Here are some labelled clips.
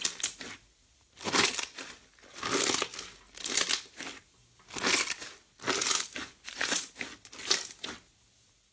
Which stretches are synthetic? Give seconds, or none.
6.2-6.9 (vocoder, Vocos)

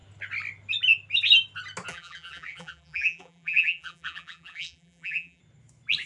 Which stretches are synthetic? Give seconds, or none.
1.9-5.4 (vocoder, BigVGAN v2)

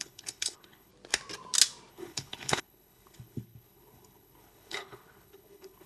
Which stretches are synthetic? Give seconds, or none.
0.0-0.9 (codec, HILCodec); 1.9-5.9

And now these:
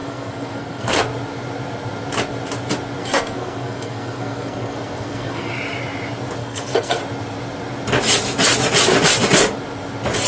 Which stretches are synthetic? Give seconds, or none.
0.0-1.0 (codec, SNAC); 3.0-5.5; 6.4-7.0

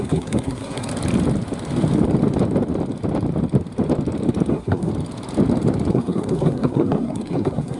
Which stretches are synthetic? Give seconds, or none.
0.0-0.9 (codec, SNAC); 4.5-4.9; 5.9-7.8